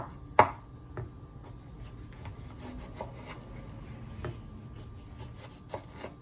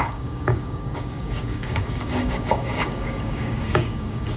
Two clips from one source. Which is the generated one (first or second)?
second